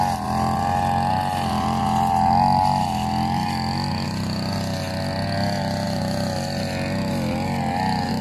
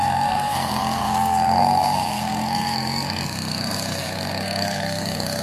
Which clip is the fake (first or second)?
second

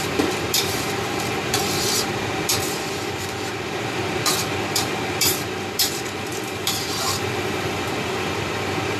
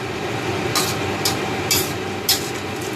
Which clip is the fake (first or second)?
first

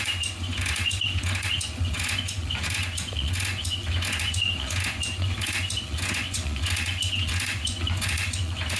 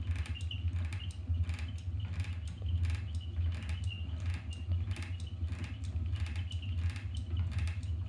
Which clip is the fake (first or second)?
first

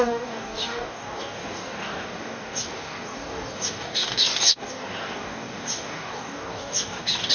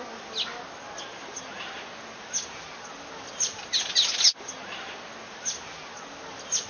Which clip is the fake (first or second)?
first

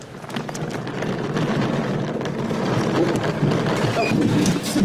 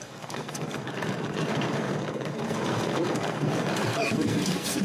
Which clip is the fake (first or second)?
second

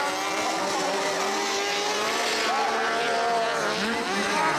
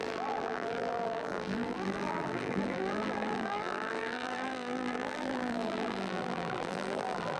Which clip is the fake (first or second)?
second